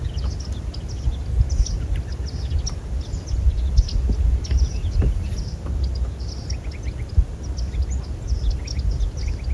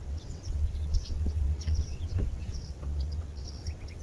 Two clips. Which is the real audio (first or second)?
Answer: first